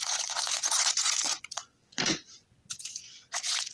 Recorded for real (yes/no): no